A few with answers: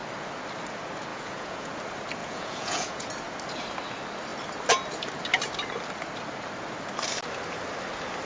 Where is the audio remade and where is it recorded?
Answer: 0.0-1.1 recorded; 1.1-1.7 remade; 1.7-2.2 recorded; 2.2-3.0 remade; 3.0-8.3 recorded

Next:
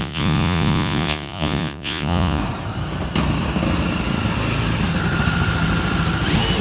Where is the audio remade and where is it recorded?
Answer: 0.0-2.4 remade; 2.4-6.6 recorded

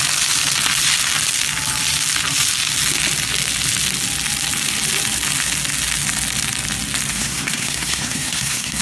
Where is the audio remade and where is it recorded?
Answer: 0.0-7.1 recorded; 7.1-8.8 remade

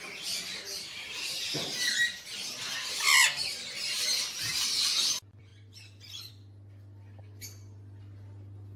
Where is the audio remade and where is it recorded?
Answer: 0.0-5.5 recorded; 5.5-6.3 remade; 6.3-8.8 recorded